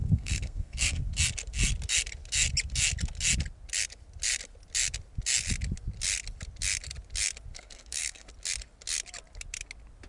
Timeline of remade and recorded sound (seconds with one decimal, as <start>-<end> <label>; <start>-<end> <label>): 0.0-1.0 remade; 1.0-7.5 recorded; 7.5-8.3 remade; 8.3-10.1 recorded